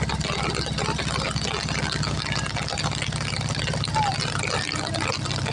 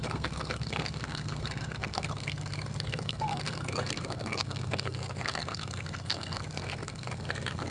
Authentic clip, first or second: first